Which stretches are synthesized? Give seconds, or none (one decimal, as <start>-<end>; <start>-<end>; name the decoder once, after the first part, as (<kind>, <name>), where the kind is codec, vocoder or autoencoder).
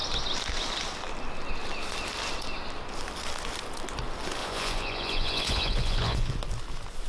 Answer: 4.4-6.4 (vocoder, Vocos)